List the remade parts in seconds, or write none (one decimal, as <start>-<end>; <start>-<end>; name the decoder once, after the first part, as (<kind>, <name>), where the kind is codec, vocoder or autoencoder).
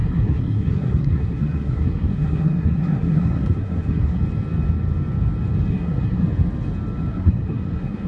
0.0-4.2 (codec, SNAC); 5.7-6.2; 7.1-8.1